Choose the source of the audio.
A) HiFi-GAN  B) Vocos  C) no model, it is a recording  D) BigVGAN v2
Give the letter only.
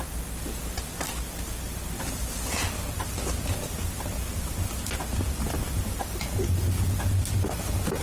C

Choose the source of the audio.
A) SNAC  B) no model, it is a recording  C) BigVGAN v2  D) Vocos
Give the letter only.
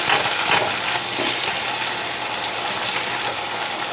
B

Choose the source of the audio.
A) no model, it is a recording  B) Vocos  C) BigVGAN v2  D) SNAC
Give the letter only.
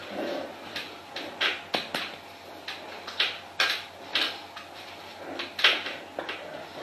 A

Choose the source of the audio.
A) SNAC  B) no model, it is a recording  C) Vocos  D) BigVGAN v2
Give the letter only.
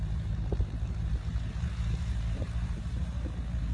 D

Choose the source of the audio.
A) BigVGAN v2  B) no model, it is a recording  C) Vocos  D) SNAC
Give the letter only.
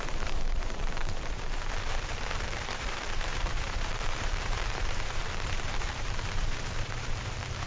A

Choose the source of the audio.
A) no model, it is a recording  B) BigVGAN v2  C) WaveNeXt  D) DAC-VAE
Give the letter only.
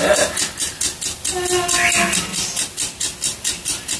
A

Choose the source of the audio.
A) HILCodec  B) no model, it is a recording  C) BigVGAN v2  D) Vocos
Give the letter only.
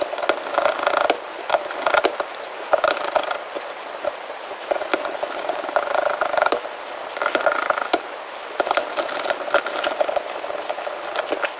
B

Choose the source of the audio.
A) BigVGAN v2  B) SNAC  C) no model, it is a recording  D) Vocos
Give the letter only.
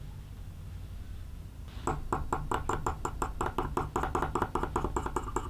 C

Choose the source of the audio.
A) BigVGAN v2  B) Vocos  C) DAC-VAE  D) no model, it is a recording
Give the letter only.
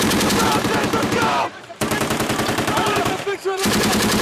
A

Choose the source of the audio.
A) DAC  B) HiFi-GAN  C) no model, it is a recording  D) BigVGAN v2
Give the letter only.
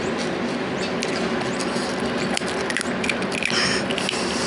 C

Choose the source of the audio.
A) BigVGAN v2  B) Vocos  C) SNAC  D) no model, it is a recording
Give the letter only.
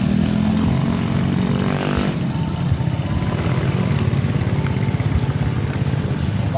D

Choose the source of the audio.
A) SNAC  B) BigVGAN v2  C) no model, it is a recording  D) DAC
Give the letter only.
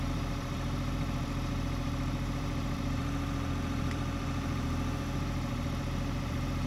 B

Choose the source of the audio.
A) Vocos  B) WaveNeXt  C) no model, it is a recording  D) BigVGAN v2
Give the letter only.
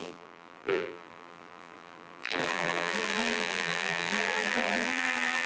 D